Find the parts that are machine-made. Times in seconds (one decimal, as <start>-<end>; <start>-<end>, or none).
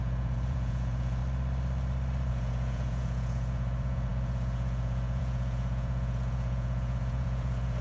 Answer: 0.0-1.2; 2.3-7.8